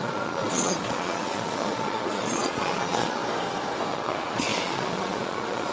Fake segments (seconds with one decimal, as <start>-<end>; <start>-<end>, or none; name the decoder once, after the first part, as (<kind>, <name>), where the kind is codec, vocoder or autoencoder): 0.0-3.2 (vocoder, Vocos); 3.9-5.7